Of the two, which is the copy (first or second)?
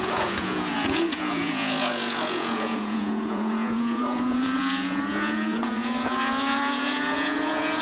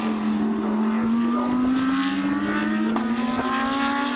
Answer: first